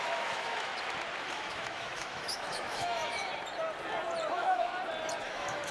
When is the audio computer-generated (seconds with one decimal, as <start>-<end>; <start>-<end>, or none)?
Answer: 0.0-0.7; 1.3-3.3; 4.3-4.7; 5.2-5.7